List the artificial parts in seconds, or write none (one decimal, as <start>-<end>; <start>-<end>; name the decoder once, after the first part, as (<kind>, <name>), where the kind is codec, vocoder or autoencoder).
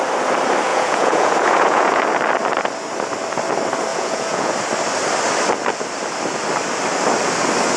0.7-2.0 (vocoder, Vocos); 3.9-4.5